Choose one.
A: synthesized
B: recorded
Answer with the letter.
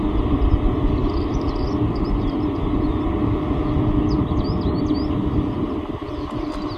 B